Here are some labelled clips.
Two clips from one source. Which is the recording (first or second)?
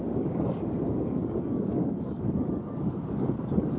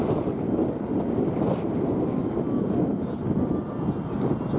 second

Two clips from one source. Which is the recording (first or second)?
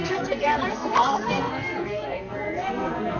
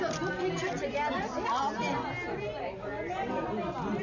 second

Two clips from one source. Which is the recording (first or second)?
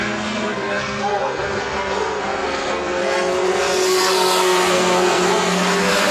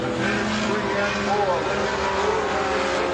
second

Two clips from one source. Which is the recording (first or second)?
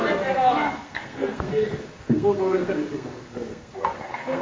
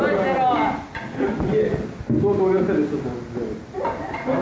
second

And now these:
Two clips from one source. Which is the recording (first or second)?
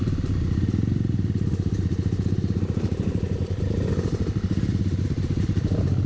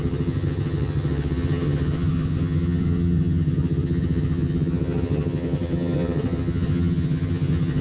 first